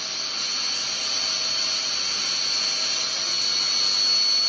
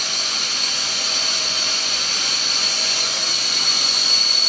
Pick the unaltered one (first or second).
first